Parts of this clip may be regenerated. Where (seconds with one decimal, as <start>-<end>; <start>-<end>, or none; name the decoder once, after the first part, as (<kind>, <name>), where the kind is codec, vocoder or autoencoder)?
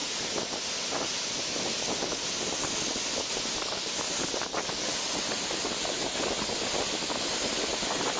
none